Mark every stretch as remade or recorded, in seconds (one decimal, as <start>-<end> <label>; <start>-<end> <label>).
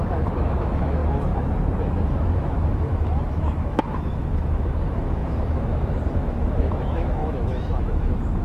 0.0-1.0 remade; 1.0-1.8 recorded; 1.8-8.4 remade